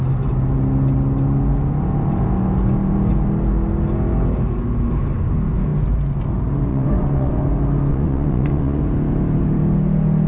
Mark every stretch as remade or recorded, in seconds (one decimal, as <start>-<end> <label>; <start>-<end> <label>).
0.0-6.7 recorded; 6.7-7.3 remade; 7.3-7.9 recorded; 7.9-8.8 remade; 8.8-10.3 recorded